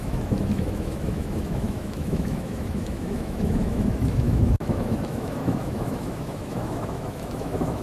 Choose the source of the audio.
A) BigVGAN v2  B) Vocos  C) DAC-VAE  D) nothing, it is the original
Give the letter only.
C